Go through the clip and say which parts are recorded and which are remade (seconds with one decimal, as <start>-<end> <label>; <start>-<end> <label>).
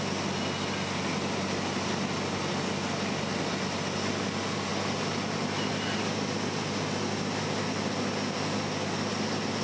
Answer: 0.0-9.6 recorded